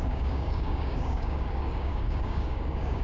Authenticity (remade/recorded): remade